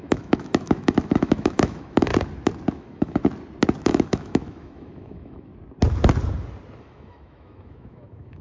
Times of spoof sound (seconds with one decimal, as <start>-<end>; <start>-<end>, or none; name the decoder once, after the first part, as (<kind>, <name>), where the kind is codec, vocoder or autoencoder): 0.0-2.1 (autoencoder, DAC-VAE); 2.7-3.2; 3.9-5.5; 6.8-8.4